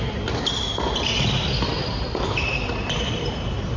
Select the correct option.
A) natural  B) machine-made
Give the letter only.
A